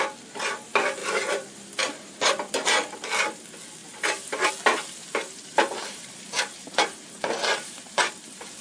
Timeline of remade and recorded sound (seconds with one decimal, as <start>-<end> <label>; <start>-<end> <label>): 0.0-1.0 recorded; 1.0-2.3 remade; 2.3-3.8 recorded; 3.8-4.5 remade; 4.5-5.0 recorded; 5.0-8.1 remade; 8.1-8.6 recorded